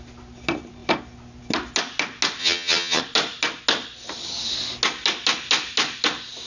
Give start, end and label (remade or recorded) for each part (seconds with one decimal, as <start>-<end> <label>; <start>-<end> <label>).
0.0-2.4 recorded; 2.4-3.0 remade; 3.0-6.5 recorded